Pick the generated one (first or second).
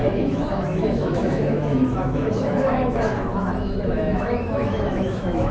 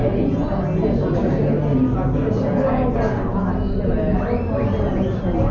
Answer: first